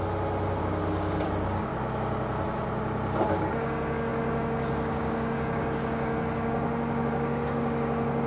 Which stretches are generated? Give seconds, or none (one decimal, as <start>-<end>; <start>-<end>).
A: 0.6-1.7; 3.2-8.3